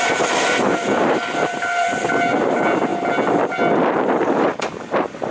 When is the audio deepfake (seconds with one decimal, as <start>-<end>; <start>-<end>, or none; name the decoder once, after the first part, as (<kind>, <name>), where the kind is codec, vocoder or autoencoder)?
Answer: 0.0-2.9 (vocoder, BigVGAN v2); 4.0-5.3